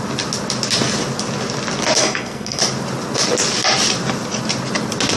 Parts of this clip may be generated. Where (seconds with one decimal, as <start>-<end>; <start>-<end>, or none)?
2.0-2.6